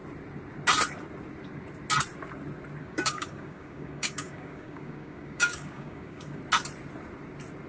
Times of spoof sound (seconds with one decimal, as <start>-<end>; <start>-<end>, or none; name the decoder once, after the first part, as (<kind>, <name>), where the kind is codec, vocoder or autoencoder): 2.8-6.4 (codec, DAC)